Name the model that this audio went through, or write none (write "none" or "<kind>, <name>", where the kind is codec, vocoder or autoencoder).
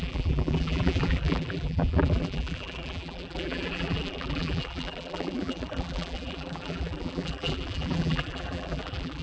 vocoder, BigVGAN v2